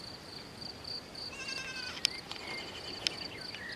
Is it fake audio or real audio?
real